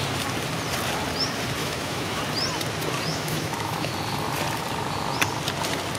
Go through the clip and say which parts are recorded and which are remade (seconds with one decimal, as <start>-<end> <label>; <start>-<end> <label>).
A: 0.0-1.6 recorded; 1.6-2.2 remade; 2.2-3.1 recorded; 3.1-3.9 remade; 3.9-6.0 recorded